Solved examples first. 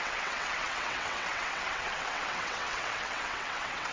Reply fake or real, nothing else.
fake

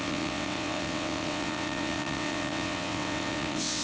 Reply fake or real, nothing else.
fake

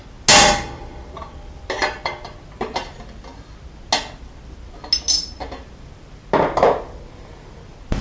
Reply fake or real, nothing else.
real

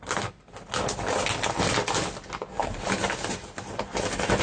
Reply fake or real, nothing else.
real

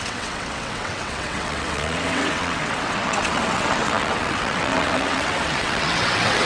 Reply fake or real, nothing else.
fake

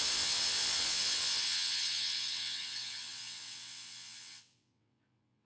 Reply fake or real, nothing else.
fake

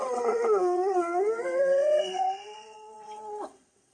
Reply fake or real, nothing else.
fake